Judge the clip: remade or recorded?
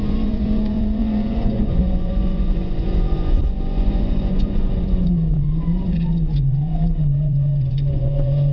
remade